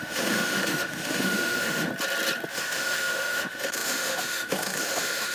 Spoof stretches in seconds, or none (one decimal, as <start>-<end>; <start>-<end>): 0.0-1.9; 2.5-5.3